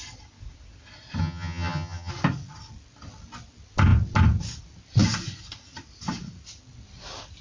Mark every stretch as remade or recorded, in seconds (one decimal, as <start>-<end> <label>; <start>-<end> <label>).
0.0-1.2 recorded; 1.2-2.1 remade; 2.1-7.4 recorded